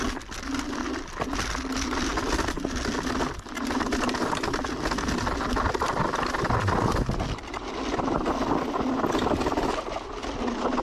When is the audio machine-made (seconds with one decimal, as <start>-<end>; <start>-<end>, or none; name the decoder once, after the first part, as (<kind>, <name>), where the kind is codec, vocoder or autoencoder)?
none